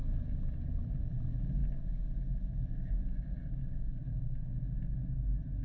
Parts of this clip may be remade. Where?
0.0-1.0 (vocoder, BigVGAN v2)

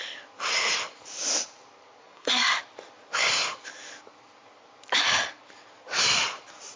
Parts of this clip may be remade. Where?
2.0-2.6 (codec, SNAC)

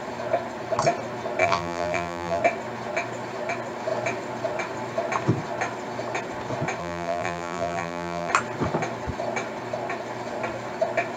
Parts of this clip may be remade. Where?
1.4-2.4 (vocoder, BigVGAN v2); 6.8-8.3

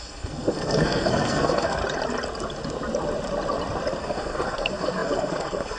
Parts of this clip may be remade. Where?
0.0-1.8 (codec, SNAC); 4.0-5.8

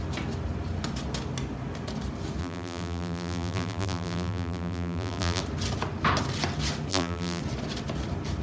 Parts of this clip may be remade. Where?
2.4-5.4 (vocoder, BigVGAN v2); 6.9-7.4